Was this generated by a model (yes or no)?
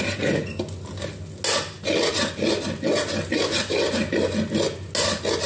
no